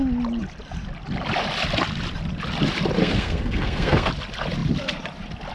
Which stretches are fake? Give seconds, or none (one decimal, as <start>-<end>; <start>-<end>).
3.0-4.1